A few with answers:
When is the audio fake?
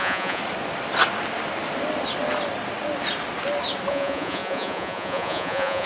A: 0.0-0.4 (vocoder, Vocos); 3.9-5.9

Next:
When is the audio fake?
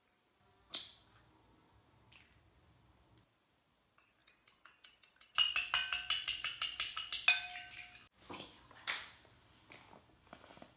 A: none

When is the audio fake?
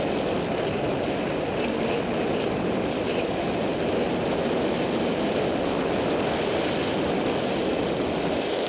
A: none